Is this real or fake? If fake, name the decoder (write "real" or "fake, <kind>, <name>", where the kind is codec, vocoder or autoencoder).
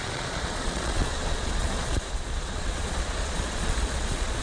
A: fake, vocoder, Vocos